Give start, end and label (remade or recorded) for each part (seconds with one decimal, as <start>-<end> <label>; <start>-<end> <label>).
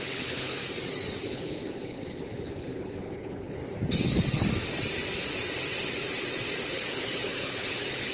0.0-0.5 remade; 0.5-1.2 recorded; 1.2-3.6 remade; 3.6-6.7 recorded; 6.7-8.1 remade